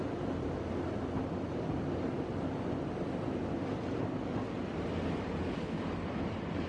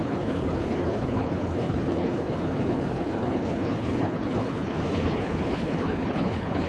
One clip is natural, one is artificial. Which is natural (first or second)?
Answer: first